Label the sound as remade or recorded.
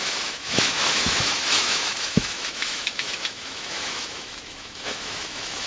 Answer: remade